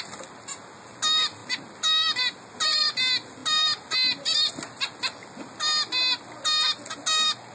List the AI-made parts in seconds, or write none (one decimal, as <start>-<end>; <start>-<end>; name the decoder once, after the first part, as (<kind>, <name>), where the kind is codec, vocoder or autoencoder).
none

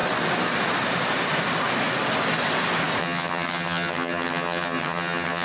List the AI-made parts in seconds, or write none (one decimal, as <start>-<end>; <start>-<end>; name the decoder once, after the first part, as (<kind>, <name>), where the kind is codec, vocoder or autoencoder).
3.0-5.4 (vocoder, HiFi-GAN)

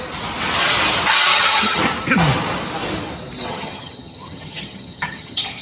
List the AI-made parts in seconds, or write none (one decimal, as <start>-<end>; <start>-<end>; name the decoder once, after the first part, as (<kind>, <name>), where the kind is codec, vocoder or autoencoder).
1.3-1.8 (vocoder, HiFi-GAN); 3.5-5.6

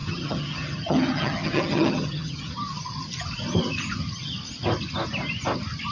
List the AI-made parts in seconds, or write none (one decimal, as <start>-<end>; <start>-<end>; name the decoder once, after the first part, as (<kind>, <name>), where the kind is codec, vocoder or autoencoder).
0.0-2.5 (vocoder, HiFi-GAN)